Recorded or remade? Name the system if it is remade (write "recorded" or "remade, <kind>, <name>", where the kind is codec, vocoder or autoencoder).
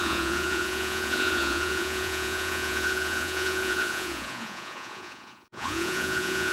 remade, vocoder, Vocos